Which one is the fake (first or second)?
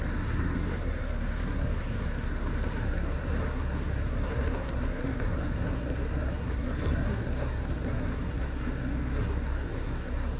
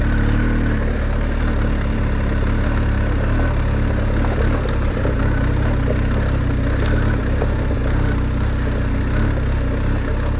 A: first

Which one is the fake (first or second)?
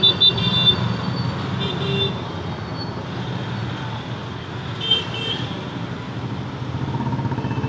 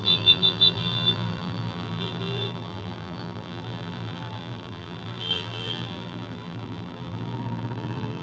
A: second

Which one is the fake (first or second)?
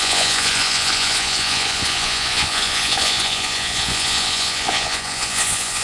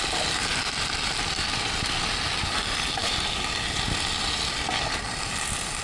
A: first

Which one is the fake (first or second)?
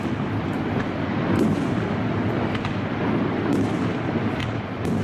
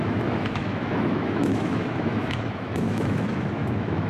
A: second